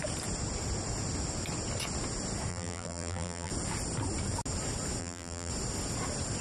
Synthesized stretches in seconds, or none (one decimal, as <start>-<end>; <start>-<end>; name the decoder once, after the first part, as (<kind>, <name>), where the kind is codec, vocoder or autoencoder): 2.5-3.5 (vocoder, BigVGAN v2); 5.0-5.5

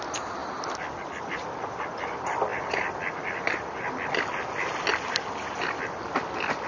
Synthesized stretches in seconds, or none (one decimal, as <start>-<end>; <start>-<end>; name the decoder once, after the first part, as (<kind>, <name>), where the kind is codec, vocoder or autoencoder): 0.4-1.3 (vocoder, BigVGAN v2)

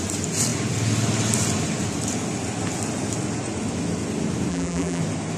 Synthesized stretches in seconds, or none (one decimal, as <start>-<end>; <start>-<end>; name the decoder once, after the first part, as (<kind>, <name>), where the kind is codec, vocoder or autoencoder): 4.5-5.0 (vocoder, BigVGAN v2)